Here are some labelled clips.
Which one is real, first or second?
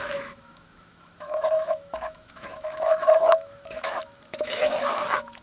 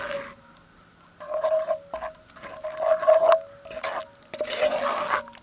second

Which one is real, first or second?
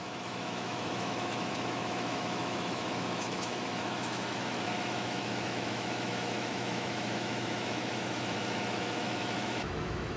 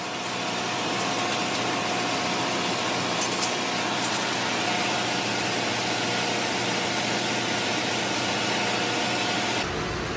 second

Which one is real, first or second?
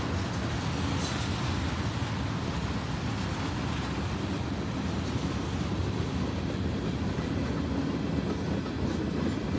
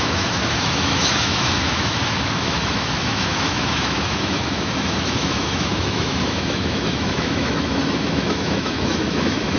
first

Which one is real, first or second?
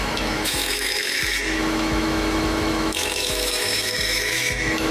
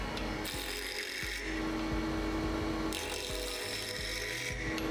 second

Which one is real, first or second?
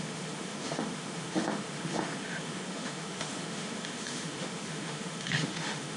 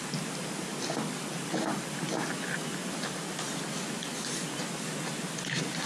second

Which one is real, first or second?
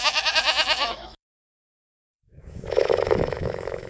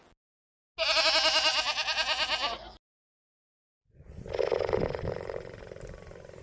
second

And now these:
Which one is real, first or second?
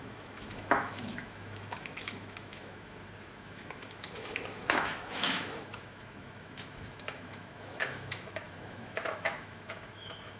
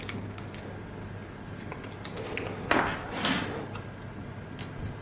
second